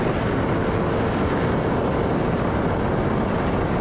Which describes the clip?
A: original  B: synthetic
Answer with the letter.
A